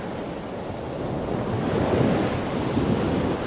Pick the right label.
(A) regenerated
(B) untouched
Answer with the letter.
B